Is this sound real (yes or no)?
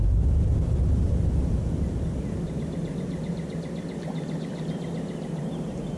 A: no